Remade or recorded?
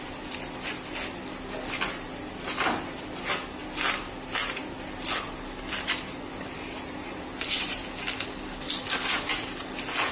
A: recorded